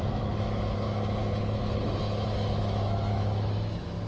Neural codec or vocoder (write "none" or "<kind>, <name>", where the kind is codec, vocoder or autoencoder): autoencoder, DAC-VAE